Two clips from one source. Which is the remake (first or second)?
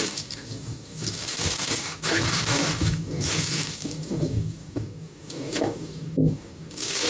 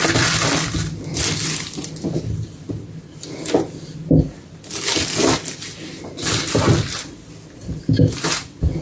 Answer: first